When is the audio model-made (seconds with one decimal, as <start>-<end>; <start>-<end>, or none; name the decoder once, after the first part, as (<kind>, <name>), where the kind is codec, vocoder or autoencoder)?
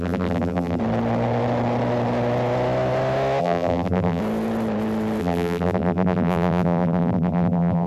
0.0-0.8 (vocoder, BigVGAN v2); 3.4-4.2; 5.2-7.9